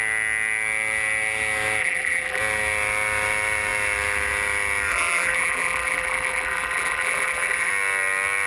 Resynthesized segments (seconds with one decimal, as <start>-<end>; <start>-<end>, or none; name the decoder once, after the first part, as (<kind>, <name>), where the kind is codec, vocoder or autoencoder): 1.8-2.4 (vocoder, BigVGAN v2); 4.9-7.7